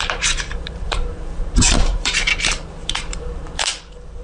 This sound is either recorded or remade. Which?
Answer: remade